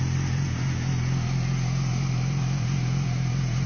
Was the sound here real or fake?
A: fake